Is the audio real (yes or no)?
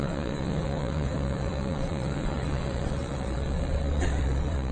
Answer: no